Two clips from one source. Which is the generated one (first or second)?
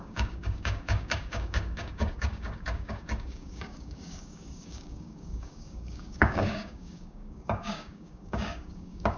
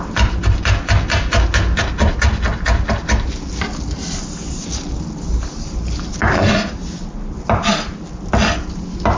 first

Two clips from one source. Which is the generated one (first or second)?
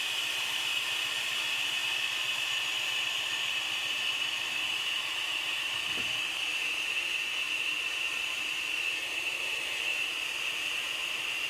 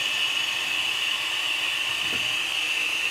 first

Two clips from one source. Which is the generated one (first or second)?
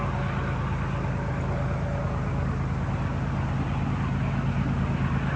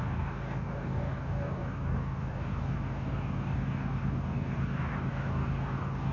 second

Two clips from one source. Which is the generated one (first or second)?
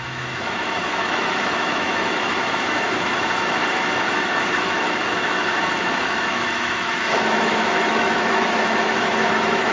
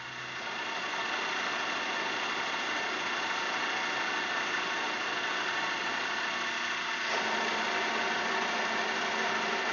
first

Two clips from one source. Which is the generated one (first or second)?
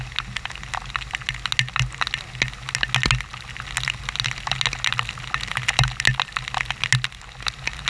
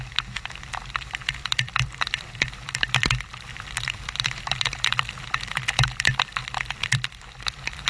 second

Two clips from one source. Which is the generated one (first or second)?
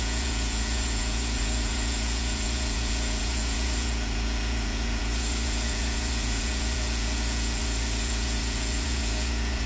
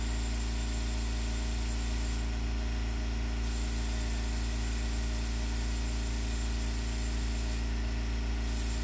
first